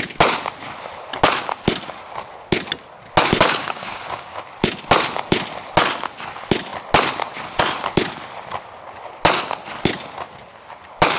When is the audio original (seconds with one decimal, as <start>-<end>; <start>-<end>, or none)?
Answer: 0.0-3.6; 4.4-11.2